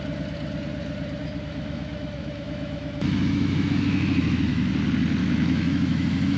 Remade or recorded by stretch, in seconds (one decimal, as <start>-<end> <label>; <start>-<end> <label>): 0.0-1.2 recorded; 1.2-4.7 remade; 4.7-5.2 recorded; 5.2-6.4 remade